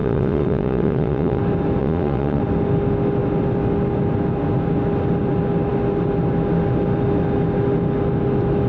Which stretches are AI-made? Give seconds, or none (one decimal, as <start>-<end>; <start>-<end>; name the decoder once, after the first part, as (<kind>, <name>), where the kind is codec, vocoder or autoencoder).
0.0-1.4 (vocoder, Vocos); 1.8-2.4

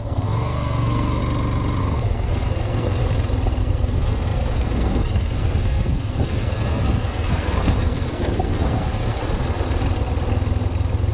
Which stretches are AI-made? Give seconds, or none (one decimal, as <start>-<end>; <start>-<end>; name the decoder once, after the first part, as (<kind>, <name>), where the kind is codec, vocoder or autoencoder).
0.0-1.2 (codec, SNAC); 1.8-3.0; 3.6-9.2

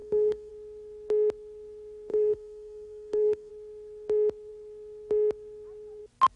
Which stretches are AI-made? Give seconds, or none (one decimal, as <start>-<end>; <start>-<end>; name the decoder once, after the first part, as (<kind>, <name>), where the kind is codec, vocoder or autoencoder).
0.0-0.5 (codec, SNAC); 2.1-3.5